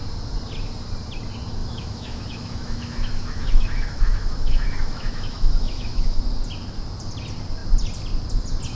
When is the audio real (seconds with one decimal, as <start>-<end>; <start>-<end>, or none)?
0.0-1.6; 6.2-8.7